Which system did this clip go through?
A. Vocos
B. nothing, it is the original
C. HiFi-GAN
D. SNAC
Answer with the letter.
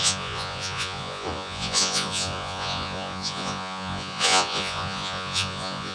A